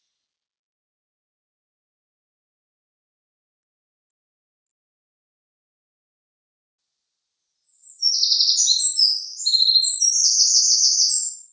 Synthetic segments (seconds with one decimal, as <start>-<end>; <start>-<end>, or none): 10.2-10.8

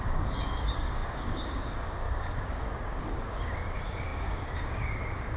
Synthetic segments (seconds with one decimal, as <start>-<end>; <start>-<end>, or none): 0.0-5.4

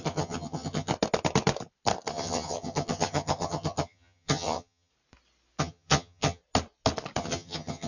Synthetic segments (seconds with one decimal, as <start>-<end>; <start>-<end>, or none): 0.0-0.9; 2.1-4.9; 5.6-6.4; 7.2-7.9

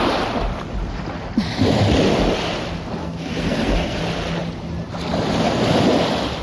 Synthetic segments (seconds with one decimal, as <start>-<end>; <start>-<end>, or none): 3.0-4.0